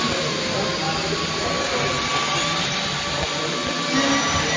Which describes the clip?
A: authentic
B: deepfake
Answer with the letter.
A